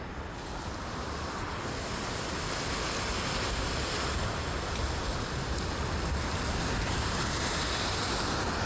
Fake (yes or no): no